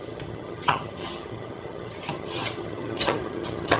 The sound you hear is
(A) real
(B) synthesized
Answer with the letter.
B